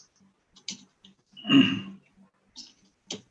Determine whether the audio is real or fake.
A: real